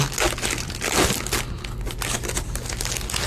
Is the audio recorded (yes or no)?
yes